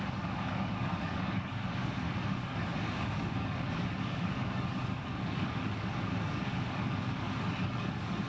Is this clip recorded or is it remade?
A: remade